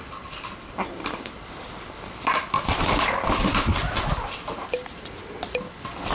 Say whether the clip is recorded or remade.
recorded